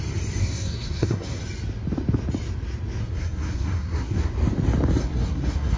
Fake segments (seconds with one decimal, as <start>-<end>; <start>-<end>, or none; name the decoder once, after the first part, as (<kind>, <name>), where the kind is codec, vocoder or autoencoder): 0.4-1.4 (codec, SNAC); 3.0-4.3; 5.0-5.8